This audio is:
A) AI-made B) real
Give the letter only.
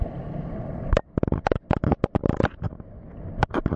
B